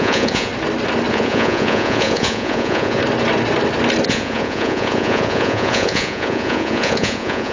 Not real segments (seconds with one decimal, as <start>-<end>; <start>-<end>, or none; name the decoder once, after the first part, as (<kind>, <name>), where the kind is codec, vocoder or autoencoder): 0.0-0.5 (vocoder, Vocos); 1.1-3.0; 4.1-7.5